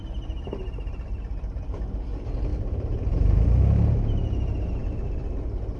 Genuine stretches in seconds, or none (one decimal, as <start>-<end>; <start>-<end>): 0.0-2.5; 3.6-5.8